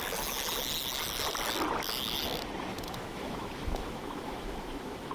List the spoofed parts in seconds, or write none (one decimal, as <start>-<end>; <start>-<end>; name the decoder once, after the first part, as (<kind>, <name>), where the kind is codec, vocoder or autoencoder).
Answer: 2.7-5.1 (autoencoder, DAC-VAE)